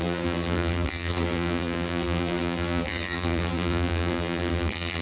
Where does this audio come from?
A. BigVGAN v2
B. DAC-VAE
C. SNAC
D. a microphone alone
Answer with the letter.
A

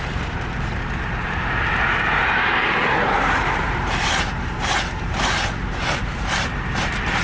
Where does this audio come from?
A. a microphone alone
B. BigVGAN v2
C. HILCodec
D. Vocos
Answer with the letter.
B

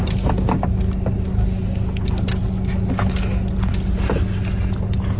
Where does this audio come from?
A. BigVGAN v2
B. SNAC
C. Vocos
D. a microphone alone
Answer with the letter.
D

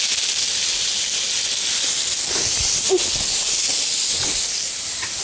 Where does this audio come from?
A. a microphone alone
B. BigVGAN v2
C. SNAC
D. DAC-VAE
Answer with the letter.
A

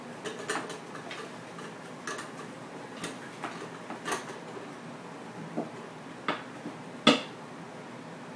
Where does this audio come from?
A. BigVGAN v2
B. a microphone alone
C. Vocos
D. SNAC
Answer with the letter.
B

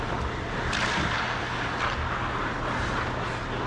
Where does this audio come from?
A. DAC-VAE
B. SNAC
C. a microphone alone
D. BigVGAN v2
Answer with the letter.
C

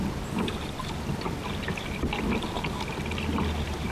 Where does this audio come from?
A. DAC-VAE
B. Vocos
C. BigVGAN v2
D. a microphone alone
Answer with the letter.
D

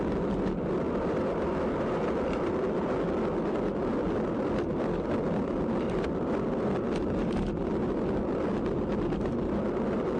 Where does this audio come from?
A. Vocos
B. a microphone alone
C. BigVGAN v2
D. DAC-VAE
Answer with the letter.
C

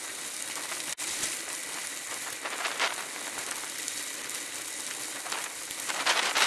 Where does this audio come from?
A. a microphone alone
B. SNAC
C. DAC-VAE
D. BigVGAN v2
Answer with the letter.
A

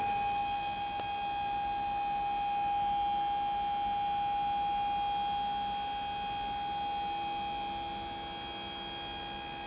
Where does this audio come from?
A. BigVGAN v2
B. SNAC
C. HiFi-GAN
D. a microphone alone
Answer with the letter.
D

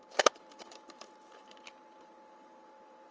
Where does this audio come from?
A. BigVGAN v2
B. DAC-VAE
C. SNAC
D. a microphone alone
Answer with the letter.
A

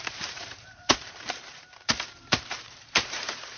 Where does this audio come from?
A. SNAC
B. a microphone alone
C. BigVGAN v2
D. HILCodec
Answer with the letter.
C